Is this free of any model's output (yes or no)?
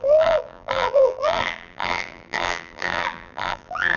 no